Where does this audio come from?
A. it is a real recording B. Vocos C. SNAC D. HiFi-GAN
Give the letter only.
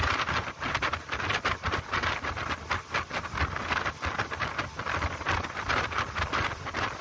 A